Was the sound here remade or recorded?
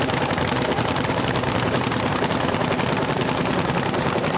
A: remade